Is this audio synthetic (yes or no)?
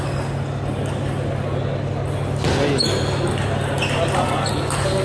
no